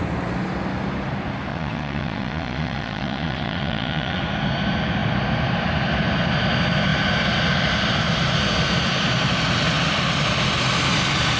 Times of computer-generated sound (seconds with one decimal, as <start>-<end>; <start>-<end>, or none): 1.5-4.2